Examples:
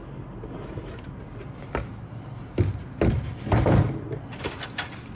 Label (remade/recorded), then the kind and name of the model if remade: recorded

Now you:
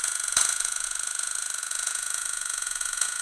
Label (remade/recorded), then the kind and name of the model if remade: remade, vocoder, Vocos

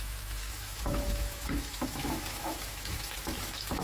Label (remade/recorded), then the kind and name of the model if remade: remade, autoencoder, DAC-VAE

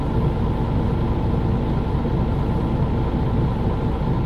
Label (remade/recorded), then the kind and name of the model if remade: recorded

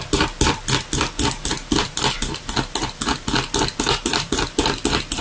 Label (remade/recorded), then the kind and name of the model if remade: recorded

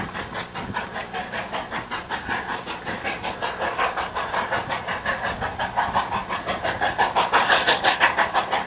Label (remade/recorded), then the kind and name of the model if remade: recorded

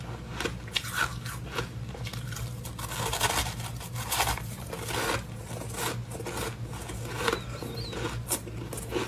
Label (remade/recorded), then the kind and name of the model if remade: recorded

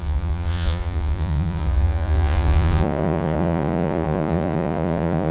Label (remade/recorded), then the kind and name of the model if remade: remade, vocoder, Vocos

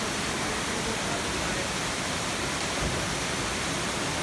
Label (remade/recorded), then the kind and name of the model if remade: recorded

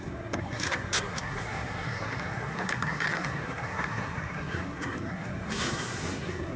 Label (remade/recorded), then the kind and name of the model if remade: remade, codec, SNAC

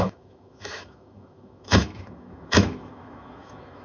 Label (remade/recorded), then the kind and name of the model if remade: remade, autoencoder, DAC-VAE